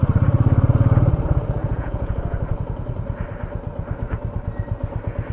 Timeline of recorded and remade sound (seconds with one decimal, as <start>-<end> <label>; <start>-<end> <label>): 0.0-1.6 recorded; 1.6-2.2 remade; 2.2-5.3 recorded